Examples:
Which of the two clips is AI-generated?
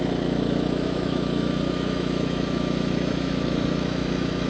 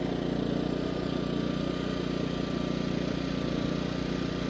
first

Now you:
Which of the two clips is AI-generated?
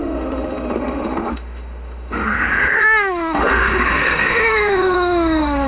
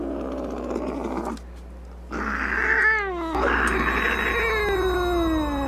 first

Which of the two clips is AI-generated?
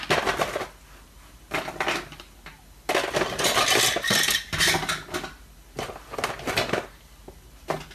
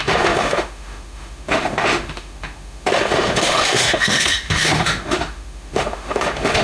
second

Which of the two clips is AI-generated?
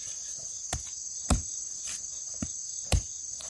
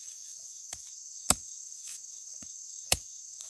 second